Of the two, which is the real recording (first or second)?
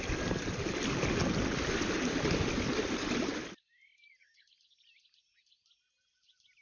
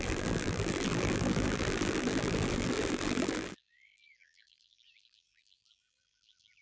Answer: first